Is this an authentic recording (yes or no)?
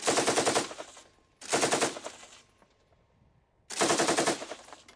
yes